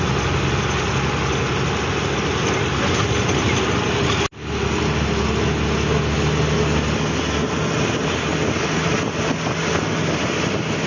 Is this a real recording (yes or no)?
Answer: yes